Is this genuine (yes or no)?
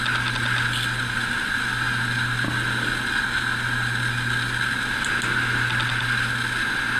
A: yes